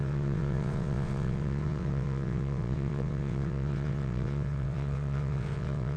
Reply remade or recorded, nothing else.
remade